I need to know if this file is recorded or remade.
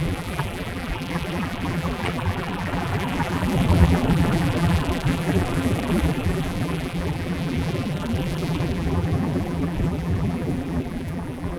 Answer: remade